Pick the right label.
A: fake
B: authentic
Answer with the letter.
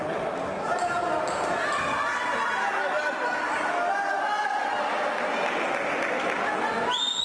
B